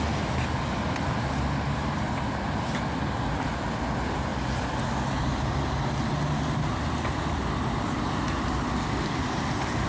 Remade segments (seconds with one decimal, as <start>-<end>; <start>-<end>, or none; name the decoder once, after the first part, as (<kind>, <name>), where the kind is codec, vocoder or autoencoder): none